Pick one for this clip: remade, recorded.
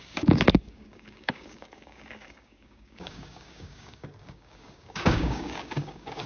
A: remade